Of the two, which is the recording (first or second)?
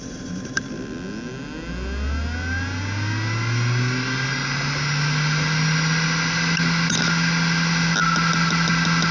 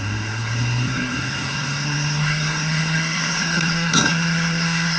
first